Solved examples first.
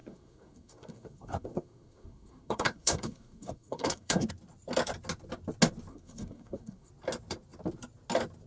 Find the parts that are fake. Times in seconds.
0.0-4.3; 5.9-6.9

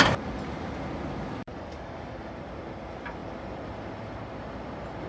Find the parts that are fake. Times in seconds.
1.5-2.3

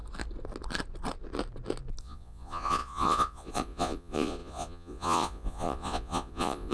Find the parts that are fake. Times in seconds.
2.0-6.7

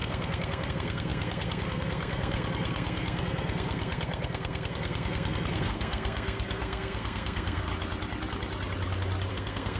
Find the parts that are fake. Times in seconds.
0.0-7.7; 9.3-9.8